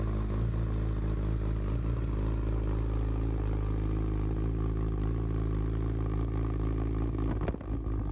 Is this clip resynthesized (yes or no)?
no